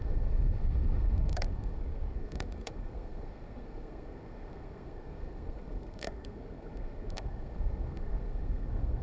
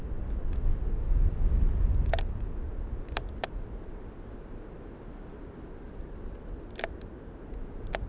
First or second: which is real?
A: second